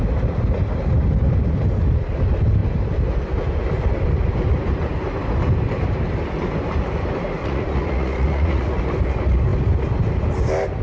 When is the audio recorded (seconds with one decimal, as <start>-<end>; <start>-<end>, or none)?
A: 0.0-7.4; 8.8-10.8